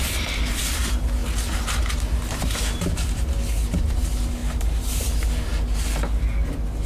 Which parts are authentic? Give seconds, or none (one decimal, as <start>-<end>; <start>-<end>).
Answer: 0.0-4.4; 5.1-6.9